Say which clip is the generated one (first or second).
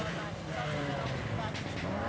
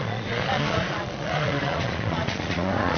second